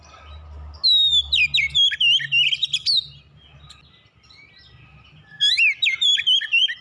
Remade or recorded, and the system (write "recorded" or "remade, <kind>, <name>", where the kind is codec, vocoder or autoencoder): recorded